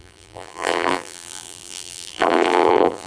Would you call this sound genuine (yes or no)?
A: no